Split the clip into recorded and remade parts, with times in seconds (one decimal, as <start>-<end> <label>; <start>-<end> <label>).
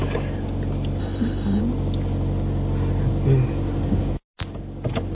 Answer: 0.0-1.0 recorded; 1.0-1.6 remade; 1.6-5.1 recorded